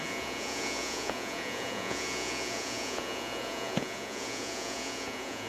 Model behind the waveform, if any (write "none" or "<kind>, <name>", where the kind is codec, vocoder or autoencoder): vocoder, Vocos